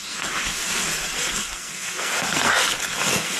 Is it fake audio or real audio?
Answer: fake